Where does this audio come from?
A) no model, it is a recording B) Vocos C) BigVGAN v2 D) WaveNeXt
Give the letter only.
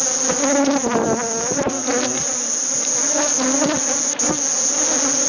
A